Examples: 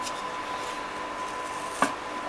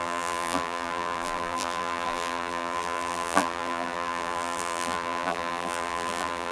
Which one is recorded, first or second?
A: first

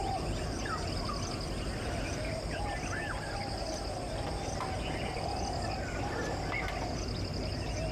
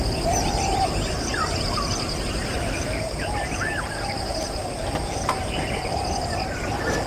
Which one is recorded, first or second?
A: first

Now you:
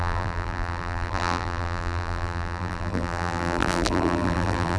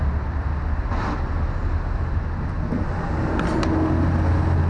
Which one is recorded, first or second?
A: second